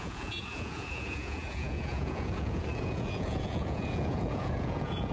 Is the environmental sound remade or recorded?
remade